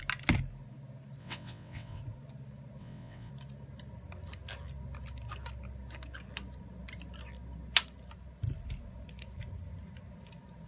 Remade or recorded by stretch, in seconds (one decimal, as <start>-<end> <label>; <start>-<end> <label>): 0.0-1.2 recorded; 1.2-2.0 remade; 2.0-2.8 recorded; 2.8-3.3 remade; 3.3-10.7 recorded